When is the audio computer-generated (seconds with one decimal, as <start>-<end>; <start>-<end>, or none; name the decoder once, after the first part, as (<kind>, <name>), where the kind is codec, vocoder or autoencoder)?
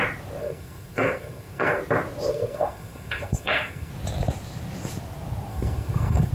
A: 0.4-1.8 (codec, SNAC); 2.3-3.9; 5.5-6.3